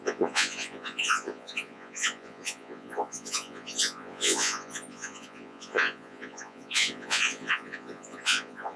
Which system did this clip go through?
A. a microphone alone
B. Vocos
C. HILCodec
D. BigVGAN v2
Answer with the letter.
B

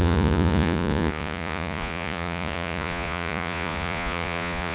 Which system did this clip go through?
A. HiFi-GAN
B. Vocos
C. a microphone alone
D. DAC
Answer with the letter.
B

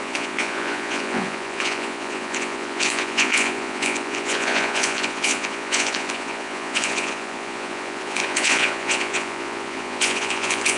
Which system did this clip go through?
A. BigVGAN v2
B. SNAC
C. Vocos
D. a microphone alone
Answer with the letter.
C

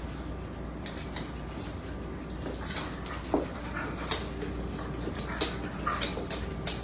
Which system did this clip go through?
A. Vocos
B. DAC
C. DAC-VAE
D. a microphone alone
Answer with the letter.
D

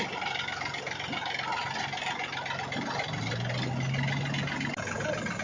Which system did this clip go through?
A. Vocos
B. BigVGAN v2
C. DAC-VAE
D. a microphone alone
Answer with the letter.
D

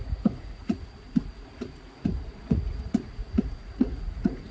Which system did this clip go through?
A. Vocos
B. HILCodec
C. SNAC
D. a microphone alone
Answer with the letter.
A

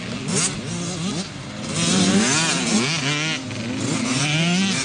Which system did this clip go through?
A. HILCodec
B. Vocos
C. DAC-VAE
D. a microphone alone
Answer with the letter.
D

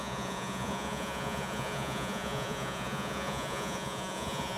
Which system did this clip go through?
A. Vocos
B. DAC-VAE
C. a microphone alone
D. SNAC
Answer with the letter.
A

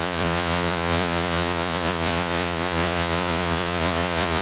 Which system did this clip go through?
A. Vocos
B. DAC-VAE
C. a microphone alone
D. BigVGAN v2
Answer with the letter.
A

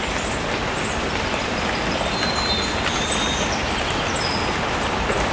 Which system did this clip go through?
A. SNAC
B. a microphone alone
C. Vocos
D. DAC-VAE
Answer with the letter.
B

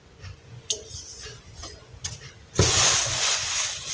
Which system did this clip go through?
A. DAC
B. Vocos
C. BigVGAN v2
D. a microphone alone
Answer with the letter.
B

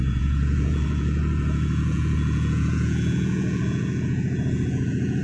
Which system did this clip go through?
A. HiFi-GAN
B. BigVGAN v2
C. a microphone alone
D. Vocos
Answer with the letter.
D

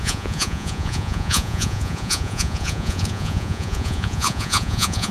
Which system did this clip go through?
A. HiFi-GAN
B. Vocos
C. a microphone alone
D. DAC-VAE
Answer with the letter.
B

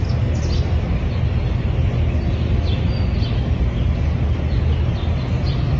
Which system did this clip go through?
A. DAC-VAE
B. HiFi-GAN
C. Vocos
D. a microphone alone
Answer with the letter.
D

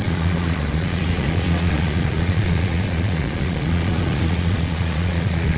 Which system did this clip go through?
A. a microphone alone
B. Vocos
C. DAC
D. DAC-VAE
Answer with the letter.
B